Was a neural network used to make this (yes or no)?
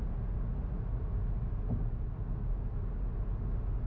no